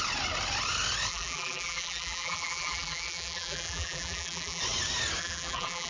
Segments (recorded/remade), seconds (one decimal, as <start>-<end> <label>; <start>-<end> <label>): 0.0-1.1 recorded; 1.1-4.6 remade; 4.6-5.2 recorded; 5.2-5.9 remade